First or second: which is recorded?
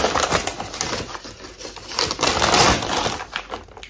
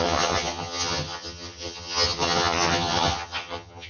first